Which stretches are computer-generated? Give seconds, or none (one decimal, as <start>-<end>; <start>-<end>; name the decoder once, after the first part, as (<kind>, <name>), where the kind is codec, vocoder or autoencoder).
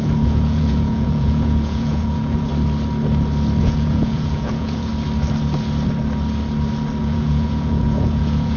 0.0-2.5 (vocoder, Vocos); 3.6-4.9; 7.0-8.6